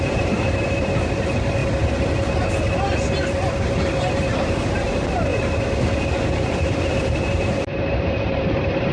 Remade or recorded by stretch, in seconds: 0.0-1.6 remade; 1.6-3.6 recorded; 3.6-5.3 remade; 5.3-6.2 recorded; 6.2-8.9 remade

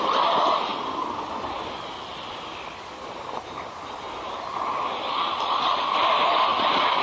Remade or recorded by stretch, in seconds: 0.0-7.0 recorded

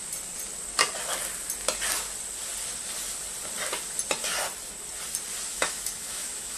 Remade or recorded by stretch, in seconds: 0.0-5.5 recorded; 5.5-6.6 remade